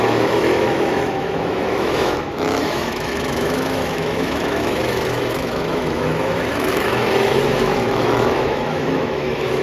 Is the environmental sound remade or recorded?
remade